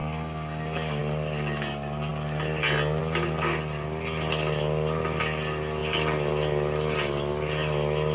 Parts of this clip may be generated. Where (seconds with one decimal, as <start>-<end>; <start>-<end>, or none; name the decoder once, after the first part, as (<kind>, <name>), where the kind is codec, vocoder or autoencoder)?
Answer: 0.0-1.0 (codec, DAC)